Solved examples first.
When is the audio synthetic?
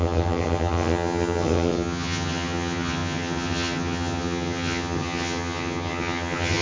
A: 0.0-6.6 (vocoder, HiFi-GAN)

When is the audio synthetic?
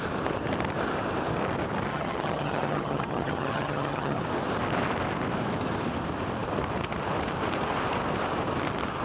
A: 1.9-4.2 (vocoder, HiFi-GAN)